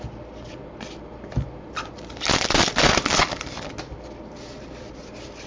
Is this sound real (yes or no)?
yes